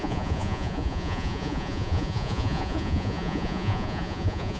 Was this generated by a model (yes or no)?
yes